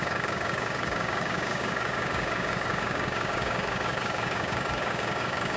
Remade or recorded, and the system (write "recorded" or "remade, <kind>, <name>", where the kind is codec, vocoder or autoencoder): remade, codec, DAC